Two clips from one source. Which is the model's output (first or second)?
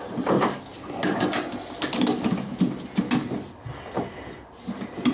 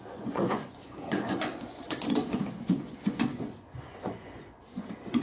second